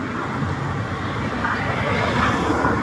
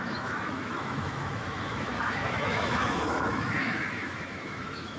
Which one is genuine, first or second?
first